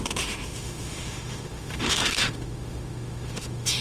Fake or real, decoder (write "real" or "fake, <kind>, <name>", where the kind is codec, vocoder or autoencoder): fake, autoencoder, DAC-VAE